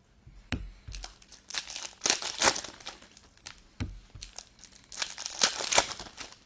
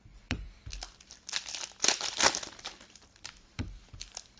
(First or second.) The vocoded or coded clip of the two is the second